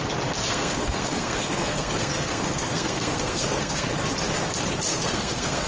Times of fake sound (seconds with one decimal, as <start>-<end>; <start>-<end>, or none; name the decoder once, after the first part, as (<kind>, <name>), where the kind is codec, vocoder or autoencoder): 0.5-3.9 (codec, SNAC); 4.9-5.7